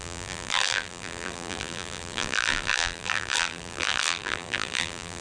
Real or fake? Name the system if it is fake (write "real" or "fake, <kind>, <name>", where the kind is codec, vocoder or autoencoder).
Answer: fake, vocoder, BigVGAN v2